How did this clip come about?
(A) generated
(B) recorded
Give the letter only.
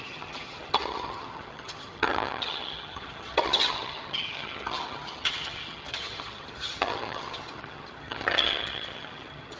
A